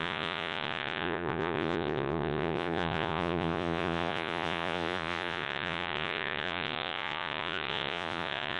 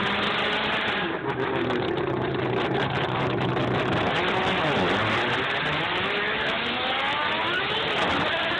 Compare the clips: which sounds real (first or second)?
second